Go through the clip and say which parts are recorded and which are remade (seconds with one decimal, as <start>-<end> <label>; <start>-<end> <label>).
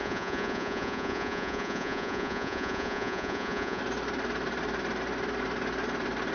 0.0-3.8 remade; 3.8-6.3 recorded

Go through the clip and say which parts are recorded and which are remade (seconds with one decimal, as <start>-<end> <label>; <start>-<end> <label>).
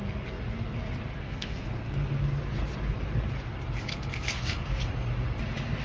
0.0-1.2 recorded; 1.2-1.9 remade; 1.9-3.9 recorded; 3.9-4.9 remade; 4.9-5.8 recorded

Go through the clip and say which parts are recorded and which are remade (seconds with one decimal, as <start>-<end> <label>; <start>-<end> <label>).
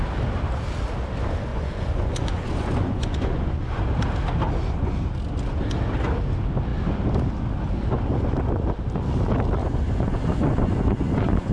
0.0-1.5 recorded; 1.5-3.8 remade; 3.8-9.6 recorded; 9.6-11.5 remade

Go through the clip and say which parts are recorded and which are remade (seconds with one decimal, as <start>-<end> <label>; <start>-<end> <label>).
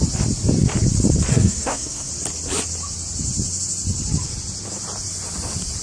0.0-1.3 recorded; 1.3-2.1 remade; 2.1-5.8 recorded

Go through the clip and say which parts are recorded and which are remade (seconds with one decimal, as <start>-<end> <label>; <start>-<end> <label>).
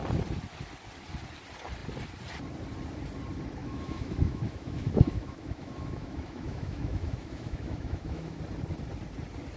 0.0-3.6 recorded; 3.6-8.4 remade; 8.4-9.6 recorded